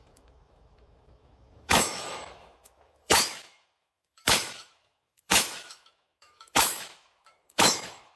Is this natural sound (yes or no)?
no